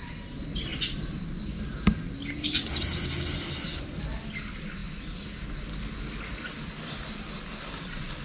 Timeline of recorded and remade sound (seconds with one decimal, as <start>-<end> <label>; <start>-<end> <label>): 0.0-8.2 recorded